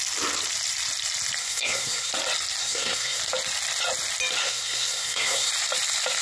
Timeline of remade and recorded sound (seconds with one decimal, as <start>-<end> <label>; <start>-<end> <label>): 0.0-1.4 recorded; 1.4-2.1 remade; 2.1-2.6 recorded; 2.6-3.2 remade; 3.2-4.4 recorded; 4.4-5.5 remade; 5.5-6.2 recorded